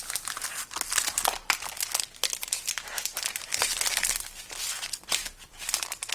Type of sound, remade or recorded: recorded